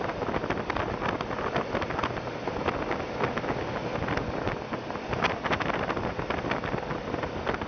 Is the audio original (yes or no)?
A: yes